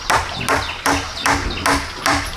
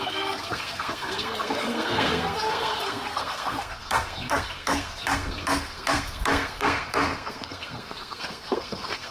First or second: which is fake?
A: second